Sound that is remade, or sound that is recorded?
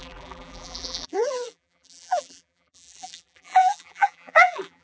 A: remade